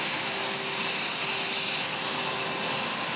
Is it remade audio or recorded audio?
recorded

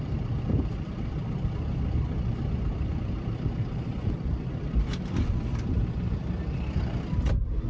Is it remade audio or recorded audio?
remade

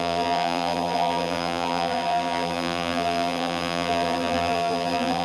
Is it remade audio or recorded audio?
remade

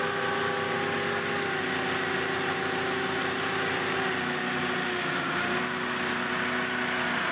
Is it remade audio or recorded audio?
recorded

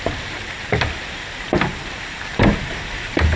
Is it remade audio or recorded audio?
remade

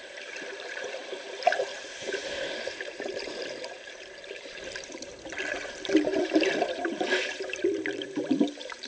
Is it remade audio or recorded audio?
remade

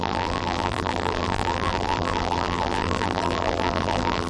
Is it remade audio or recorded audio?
remade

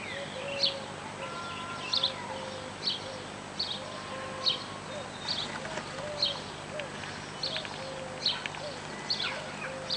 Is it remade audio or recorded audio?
recorded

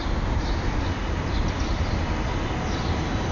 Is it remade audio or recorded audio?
recorded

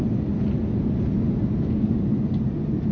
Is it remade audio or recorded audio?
recorded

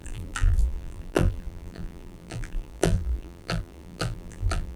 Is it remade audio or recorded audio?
remade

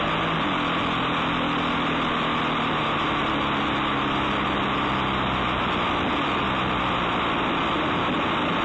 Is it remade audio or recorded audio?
recorded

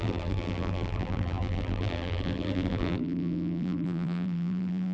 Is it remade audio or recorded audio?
remade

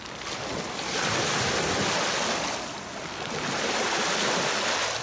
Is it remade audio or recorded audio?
recorded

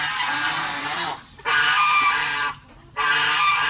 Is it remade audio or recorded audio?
remade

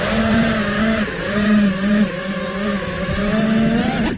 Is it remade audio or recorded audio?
remade